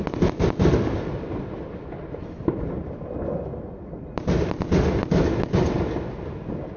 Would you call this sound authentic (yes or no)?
yes